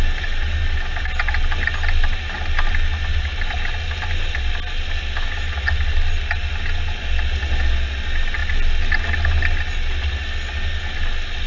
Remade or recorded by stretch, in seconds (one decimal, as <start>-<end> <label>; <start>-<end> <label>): 0.0-11.5 recorded